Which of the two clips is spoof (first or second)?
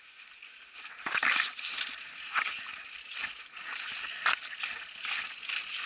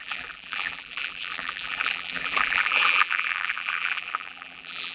second